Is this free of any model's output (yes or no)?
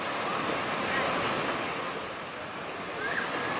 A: yes